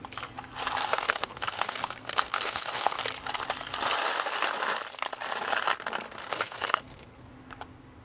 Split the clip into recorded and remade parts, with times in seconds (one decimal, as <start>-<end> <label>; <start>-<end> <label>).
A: 0.0-0.8 recorded; 0.8-3.0 remade; 3.0-6.2 recorded; 6.2-7.3 remade; 7.3-8.0 recorded